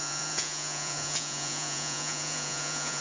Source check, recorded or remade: remade